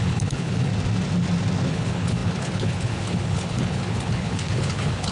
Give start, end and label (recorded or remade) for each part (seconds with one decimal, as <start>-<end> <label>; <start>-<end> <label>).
0.0-0.7 remade; 0.7-1.7 recorded; 1.7-5.1 remade